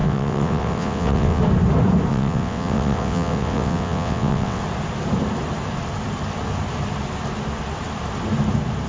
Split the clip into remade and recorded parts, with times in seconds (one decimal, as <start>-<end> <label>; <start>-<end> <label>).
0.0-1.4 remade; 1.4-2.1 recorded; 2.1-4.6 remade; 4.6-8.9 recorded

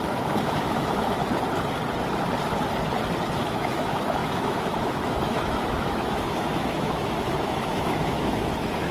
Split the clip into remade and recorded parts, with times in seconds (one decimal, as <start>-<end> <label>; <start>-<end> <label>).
0.0-1.2 remade; 1.2-3.5 recorded; 3.5-8.9 remade

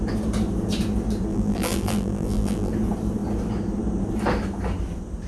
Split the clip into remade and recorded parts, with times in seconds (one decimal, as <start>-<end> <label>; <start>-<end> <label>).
0.0-1.3 recorded; 1.3-2.7 remade; 2.7-5.3 recorded

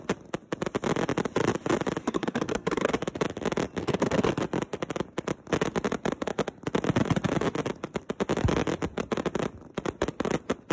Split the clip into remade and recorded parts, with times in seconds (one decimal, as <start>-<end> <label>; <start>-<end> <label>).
0.0-2.0 recorded; 2.0-2.9 remade; 2.9-3.8 recorded; 3.8-4.3 remade; 4.3-10.7 recorded

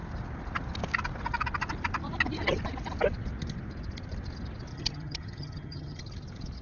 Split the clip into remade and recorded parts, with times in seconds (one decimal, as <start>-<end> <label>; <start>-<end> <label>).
0.0-4.7 recorded; 4.7-6.0 remade; 6.0-6.6 recorded

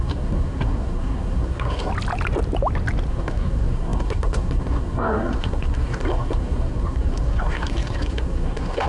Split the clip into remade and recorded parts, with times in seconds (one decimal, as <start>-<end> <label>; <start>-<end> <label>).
0.0-1.9 remade; 1.9-3.1 recorded; 3.1-8.9 remade

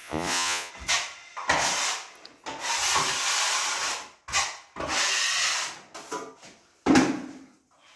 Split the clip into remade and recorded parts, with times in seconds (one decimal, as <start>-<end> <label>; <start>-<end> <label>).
0.0-0.7 remade; 0.7-8.0 recorded